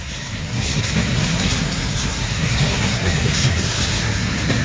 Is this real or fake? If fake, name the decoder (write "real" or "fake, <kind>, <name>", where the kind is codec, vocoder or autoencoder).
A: fake, codec, SNAC